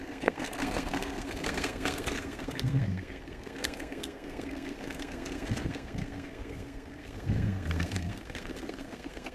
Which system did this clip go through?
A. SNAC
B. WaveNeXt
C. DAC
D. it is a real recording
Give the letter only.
A